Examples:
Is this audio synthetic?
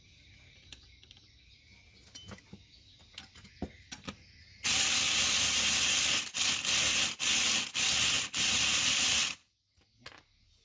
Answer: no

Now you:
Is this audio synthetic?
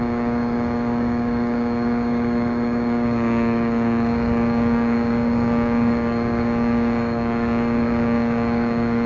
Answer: yes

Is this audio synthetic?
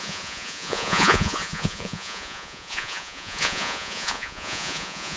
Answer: yes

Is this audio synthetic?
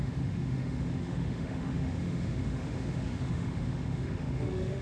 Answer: yes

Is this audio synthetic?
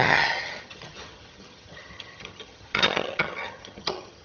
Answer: yes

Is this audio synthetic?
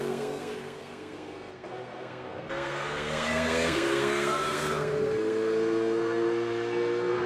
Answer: yes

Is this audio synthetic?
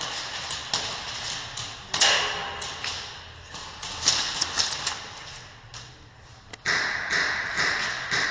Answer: no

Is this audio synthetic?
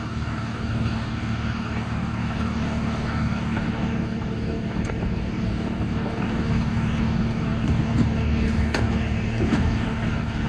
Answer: yes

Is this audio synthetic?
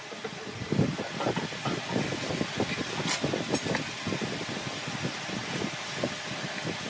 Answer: no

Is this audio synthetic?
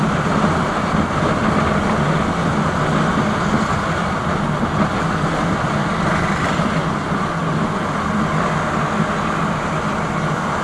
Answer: no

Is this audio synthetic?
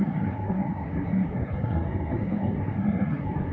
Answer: yes